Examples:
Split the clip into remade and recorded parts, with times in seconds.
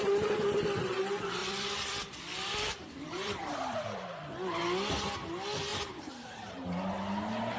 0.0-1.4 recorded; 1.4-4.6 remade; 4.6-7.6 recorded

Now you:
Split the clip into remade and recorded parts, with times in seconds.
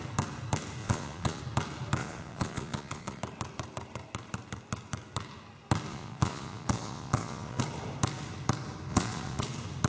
0.0-0.8 recorded; 0.8-1.4 remade; 1.4-2.0 recorded; 2.0-3.2 remade; 3.2-5.9 recorded; 5.9-7.6 remade; 7.6-8.9 recorded; 8.9-9.4 remade; 9.4-9.9 recorded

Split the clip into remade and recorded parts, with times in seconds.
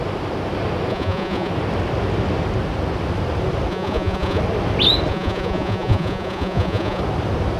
0.0-0.9 recorded; 0.9-1.5 remade; 1.5-3.7 recorded; 3.7-4.4 remade; 4.4-5.1 recorded; 5.1-7.0 remade; 7.0-7.6 recorded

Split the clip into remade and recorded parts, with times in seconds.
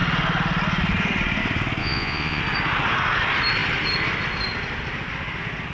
0.0-1.8 recorded; 1.8-2.4 remade; 2.4-5.7 recorded